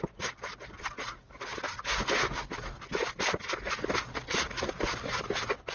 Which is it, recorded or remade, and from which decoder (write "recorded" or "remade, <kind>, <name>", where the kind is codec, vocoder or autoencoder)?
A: recorded